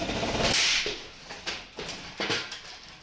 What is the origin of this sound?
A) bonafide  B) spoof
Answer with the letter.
A